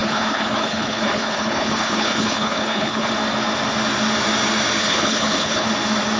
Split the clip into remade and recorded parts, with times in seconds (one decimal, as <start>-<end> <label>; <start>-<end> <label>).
0.0-3.1 remade; 3.1-4.8 recorded; 4.8-5.7 remade; 5.7-6.2 recorded